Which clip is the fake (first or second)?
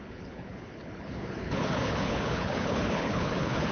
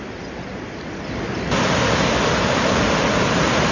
first